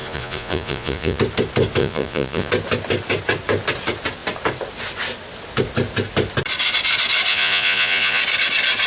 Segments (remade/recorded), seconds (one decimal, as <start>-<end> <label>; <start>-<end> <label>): 0.0-1.2 remade; 1.2-1.8 recorded; 1.8-2.5 remade; 2.5-7.3 recorded; 7.3-8.2 remade; 8.2-8.9 recorded